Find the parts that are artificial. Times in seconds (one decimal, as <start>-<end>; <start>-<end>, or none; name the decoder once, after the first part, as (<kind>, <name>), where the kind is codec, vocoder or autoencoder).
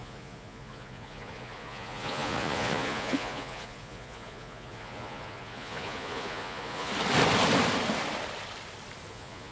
0.0-6.9 (vocoder, Vocos); 9.1-9.5